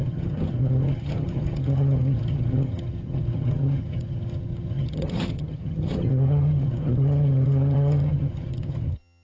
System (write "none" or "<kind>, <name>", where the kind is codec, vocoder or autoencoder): vocoder, HiFi-GAN